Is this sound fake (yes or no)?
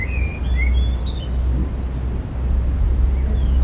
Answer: no